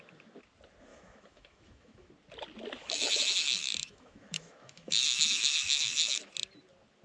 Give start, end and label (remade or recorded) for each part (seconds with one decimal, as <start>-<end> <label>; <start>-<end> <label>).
0.0-0.9 recorded; 0.9-2.1 remade; 2.1-2.8 recorded; 2.8-6.3 remade; 6.3-7.0 recorded